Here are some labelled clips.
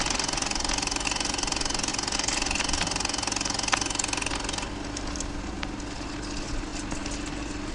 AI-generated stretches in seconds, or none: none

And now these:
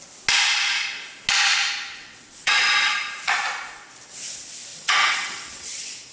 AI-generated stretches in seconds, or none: 2.0-2.9; 4.7-6.1

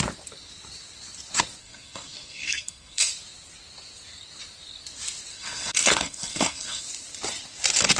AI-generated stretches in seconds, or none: 1.6-3.1; 5.3-6.8

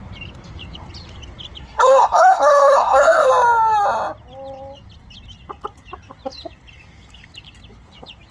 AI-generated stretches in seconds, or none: 1.6-3.3